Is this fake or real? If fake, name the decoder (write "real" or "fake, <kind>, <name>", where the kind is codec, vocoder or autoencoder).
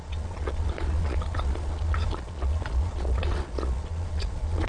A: fake, vocoder, Vocos